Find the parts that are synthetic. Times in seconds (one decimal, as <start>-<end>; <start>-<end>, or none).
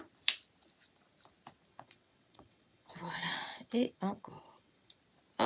1.7-5.0